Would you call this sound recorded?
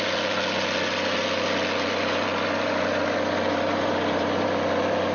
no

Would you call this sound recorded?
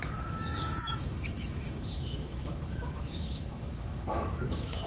no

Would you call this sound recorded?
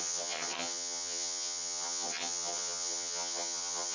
no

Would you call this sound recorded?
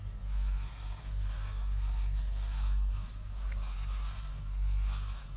no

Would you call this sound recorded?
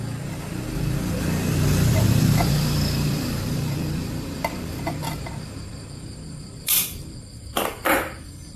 no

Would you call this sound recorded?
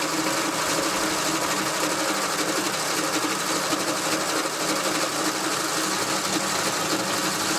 yes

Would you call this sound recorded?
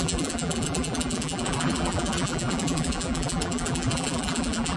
no